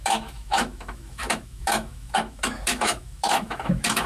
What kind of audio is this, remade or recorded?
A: remade